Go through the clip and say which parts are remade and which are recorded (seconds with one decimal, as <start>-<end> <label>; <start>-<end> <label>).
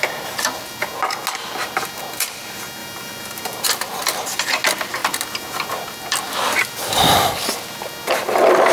0.0-2.8 recorded; 2.8-3.7 remade; 3.7-8.7 recorded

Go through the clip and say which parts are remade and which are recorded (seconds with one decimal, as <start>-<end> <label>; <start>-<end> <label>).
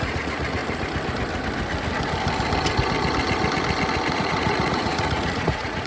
0.0-0.6 remade; 0.6-4.1 recorded; 4.1-5.9 remade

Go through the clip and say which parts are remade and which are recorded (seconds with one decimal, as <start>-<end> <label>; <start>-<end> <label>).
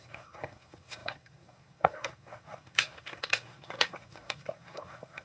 0.0-5.2 remade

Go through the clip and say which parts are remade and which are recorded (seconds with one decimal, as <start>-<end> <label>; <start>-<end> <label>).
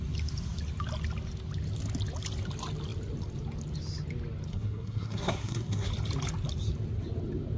0.0-4.5 recorded; 4.5-5.9 remade; 5.9-7.6 recorded